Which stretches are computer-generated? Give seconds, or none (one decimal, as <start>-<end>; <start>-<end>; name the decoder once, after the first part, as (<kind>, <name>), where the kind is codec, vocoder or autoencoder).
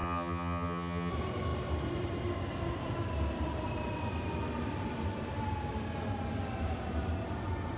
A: 0.0-1.1 (vocoder, HiFi-GAN)